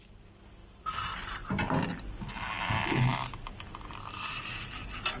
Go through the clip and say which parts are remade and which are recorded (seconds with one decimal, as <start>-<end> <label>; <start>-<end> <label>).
0.0-5.2 recorded